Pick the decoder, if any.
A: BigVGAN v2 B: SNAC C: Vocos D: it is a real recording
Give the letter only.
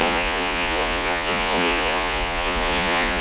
C